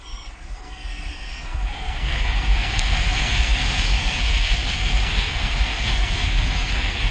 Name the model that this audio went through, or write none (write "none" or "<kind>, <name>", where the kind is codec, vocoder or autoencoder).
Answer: codec, SNAC